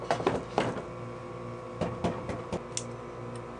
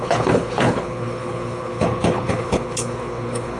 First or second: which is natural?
first